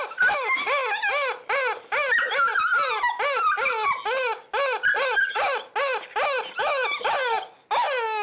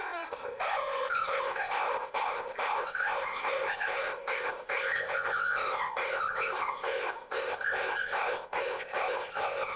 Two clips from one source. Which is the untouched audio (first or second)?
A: first